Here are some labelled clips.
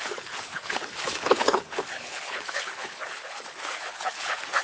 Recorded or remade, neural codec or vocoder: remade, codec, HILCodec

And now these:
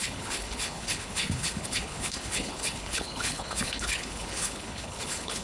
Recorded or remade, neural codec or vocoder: remade, codec, HILCodec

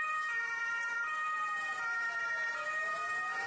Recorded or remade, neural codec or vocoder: recorded